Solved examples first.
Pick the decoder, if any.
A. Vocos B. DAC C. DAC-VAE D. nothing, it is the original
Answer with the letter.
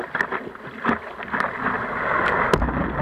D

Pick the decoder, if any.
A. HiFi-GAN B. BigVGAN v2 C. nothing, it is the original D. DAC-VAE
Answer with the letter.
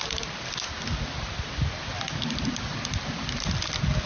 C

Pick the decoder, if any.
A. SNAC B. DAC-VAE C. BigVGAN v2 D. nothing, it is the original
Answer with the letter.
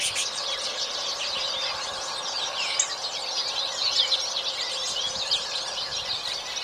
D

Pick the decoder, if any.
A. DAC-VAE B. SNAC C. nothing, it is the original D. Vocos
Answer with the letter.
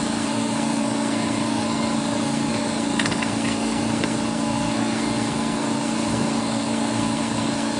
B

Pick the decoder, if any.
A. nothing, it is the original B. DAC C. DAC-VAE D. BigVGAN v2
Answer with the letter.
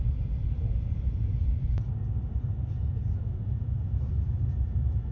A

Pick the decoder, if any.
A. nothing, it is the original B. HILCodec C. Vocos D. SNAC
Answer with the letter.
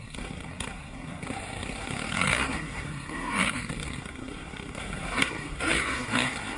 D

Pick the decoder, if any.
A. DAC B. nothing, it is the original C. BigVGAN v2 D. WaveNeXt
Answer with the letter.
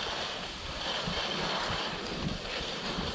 B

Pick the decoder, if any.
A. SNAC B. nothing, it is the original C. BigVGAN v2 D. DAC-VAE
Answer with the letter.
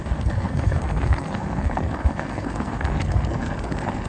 A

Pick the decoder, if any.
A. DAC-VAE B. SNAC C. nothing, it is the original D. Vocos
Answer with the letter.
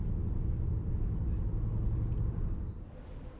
C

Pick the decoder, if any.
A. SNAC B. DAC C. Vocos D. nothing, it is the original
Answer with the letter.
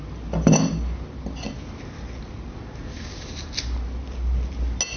D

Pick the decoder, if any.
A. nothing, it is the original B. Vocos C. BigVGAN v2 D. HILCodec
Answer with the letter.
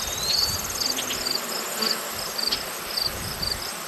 A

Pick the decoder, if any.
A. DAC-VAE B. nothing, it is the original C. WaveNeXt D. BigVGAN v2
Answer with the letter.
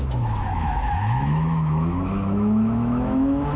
A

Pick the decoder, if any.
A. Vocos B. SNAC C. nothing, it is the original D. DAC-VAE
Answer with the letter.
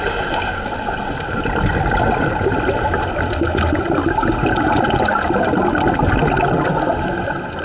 C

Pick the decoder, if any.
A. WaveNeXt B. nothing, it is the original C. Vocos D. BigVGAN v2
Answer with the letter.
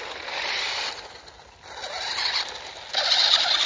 B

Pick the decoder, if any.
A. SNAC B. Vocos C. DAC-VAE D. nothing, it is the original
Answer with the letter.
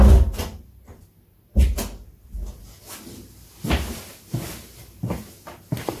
D